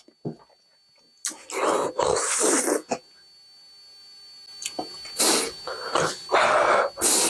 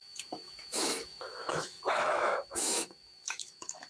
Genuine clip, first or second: first